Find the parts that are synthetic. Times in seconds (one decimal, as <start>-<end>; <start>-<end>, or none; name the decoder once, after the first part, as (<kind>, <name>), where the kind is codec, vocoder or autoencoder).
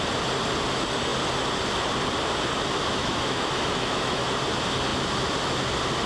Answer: 3.0-4.2 (autoencoder, DAC-VAE)